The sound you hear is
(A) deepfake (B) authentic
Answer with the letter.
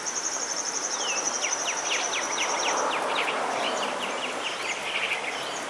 B